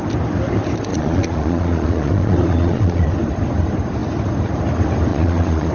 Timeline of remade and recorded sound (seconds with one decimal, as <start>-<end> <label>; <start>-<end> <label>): 0.0-0.9 recorded; 0.9-3.1 remade; 3.1-5.1 recorded; 5.1-5.7 remade